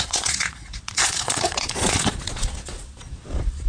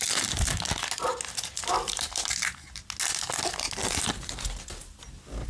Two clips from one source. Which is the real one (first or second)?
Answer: second